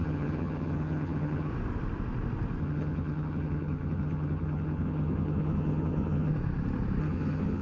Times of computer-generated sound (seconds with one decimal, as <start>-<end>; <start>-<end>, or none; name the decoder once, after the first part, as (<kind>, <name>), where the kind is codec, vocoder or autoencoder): 0.0-1.5 (vocoder, HiFi-GAN); 2.6-6.3; 7.0-7.6